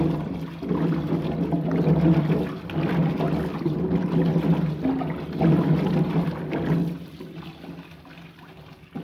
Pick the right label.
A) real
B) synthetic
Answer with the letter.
A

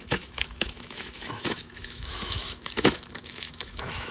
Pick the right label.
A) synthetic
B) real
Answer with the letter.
A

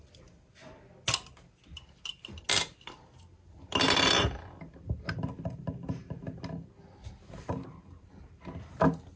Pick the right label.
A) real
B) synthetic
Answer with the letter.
A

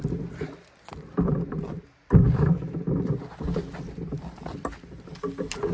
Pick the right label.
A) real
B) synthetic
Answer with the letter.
A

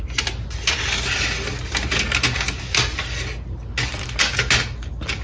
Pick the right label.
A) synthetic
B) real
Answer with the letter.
B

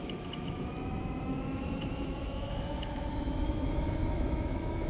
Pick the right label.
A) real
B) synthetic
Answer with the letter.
B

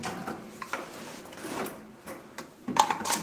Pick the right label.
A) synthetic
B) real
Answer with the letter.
B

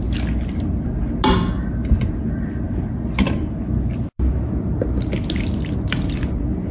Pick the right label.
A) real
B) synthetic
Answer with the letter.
A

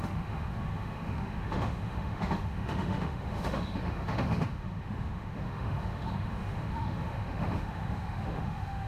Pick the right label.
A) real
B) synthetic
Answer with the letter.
B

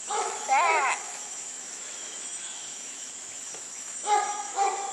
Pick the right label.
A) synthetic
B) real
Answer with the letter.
A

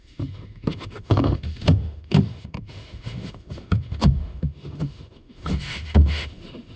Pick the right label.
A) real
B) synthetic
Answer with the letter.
B